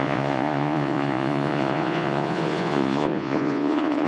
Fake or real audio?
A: fake